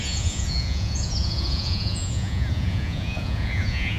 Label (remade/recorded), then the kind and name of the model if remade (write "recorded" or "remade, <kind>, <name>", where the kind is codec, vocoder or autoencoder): remade, vocoder, Vocos